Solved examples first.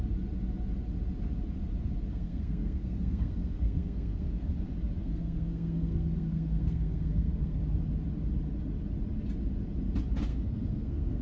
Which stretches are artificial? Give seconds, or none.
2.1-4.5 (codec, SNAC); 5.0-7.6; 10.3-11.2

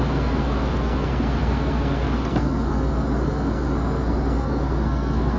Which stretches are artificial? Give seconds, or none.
0.0-5.4 (codec, SNAC)

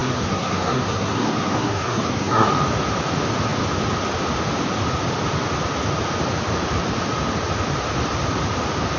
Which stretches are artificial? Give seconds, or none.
0.0-2.5 (codec, SNAC)

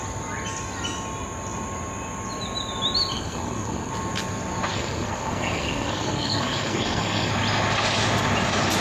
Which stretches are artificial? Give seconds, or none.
3.1-3.9 (codec, SNAC); 4.7-7.3

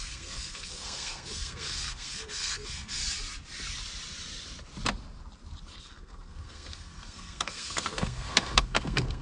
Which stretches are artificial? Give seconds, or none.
0.0-3.0 (codec, SNAC); 5.8-9.2

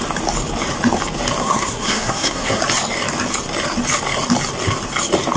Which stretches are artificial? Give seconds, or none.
1.4-2.6 (codec, SNAC)